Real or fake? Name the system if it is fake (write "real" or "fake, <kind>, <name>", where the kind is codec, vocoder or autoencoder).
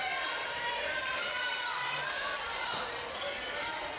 real